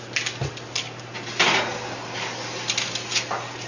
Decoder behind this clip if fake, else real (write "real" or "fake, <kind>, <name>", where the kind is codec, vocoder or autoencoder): real